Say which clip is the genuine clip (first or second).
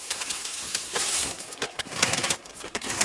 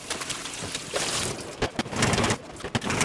second